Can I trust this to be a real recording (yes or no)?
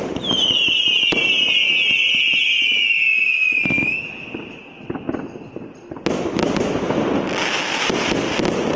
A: yes